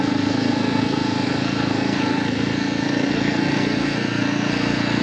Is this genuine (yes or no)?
no